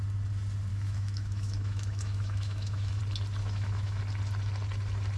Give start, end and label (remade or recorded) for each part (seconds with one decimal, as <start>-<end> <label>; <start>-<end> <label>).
0.0-0.7 recorded; 0.7-3.0 remade; 3.0-3.4 recorded; 3.4-4.0 remade; 4.0-5.2 recorded

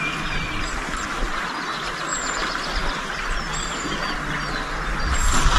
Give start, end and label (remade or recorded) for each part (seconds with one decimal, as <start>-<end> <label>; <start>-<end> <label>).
0.0-5.6 recorded

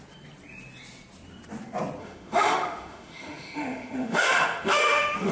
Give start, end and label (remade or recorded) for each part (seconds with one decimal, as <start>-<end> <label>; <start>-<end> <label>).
0.0-2.0 recorded; 2.0-5.3 remade